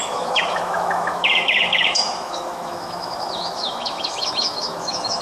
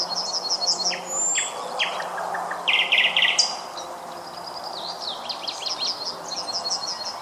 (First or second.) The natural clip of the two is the second